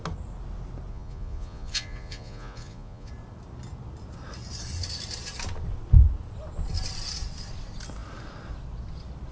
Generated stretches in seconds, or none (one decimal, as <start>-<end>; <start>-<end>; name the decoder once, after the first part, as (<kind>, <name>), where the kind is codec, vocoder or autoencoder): 0.9-3.1 (vocoder, Vocos)